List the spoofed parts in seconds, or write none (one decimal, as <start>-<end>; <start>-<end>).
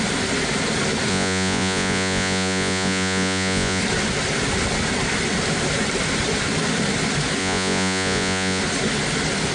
1.1-3.8; 7.4-8.6